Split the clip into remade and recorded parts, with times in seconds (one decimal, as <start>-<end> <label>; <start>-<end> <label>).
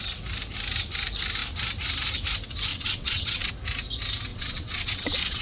0.0-2.7 recorded; 2.7-3.5 remade; 3.5-4.3 recorded; 4.3-5.4 remade